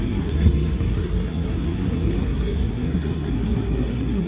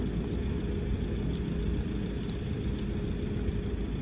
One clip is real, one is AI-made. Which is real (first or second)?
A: second